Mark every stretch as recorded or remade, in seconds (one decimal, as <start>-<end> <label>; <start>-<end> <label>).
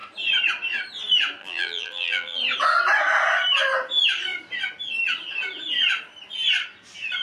0.0-1.4 recorded; 1.4-2.4 remade; 2.4-7.2 recorded